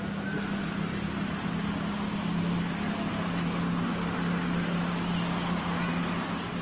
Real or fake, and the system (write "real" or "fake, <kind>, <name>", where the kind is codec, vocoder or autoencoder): real